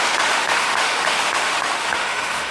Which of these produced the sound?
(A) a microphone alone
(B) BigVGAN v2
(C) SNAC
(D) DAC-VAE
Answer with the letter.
D